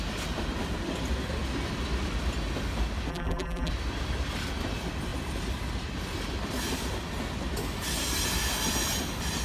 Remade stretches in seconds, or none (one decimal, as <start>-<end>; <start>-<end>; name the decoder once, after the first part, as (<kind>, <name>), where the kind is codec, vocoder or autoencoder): 3.1-3.7 (vocoder, BigVGAN v2)

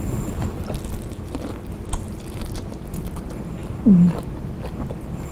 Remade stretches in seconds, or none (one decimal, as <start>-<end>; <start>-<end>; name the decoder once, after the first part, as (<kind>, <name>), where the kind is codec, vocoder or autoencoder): none

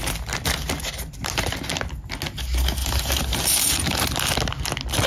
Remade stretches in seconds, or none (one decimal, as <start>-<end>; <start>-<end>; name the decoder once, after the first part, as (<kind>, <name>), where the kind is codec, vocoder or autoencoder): 2.8-4.1 (vocoder, BigVGAN v2)

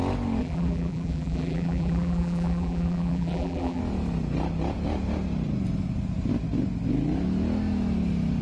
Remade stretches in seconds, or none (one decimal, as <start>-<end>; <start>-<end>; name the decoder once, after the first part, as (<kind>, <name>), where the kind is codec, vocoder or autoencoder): 0.4-3.8 (vocoder, BigVGAN v2)

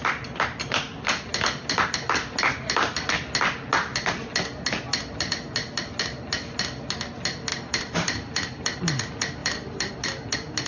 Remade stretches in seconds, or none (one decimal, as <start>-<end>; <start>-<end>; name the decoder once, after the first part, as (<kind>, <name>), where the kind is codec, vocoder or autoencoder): 7.5-8.8 (vocoder, BigVGAN v2); 9.4-9.9

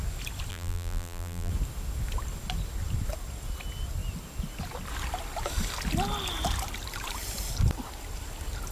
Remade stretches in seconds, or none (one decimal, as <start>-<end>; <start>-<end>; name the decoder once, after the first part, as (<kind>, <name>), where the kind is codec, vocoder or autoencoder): 0.5-1.5 (vocoder, BigVGAN v2)